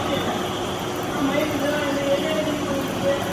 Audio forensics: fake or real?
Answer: real